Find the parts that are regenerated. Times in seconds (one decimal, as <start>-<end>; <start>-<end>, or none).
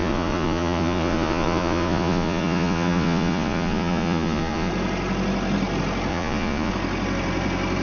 0.0-4.7; 6.1-6.7